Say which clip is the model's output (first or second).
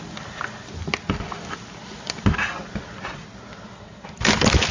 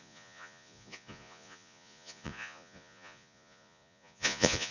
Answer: second